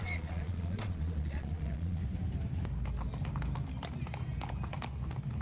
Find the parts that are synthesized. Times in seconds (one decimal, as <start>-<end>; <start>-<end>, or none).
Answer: 0.0-2.0